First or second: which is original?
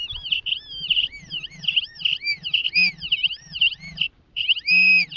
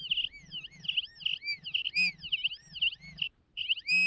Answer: second